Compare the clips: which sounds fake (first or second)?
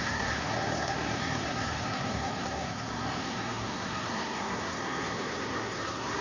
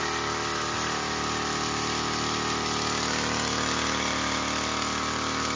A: first